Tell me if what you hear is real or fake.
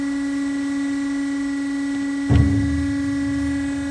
real